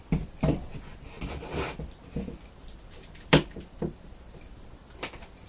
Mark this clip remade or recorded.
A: recorded